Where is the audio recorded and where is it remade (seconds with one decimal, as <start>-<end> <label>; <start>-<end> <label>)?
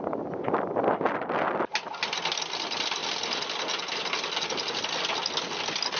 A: 0.0-6.0 recorded